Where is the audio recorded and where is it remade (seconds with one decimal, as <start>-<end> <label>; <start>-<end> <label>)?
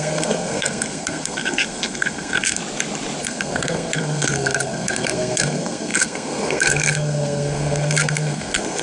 0.0-2.6 remade; 2.6-3.2 recorded; 3.2-8.8 remade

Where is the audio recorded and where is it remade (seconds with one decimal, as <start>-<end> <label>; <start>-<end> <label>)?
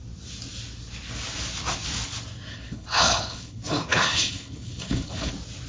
0.0-2.5 recorded; 2.5-5.3 remade; 5.3-5.7 recorded